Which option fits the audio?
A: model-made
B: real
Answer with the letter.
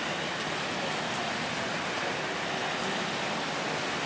B